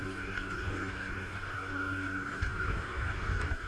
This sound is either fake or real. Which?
fake